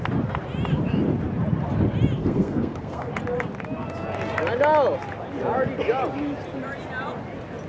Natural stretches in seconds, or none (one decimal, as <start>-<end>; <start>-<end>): 0.0-2.2; 3.1-7.7